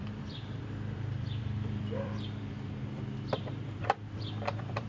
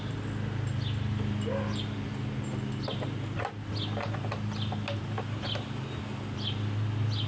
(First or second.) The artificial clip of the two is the first